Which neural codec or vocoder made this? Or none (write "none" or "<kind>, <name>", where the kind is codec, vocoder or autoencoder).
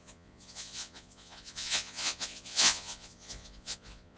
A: vocoder, Vocos